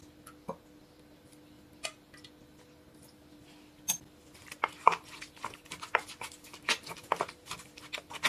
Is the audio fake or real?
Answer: real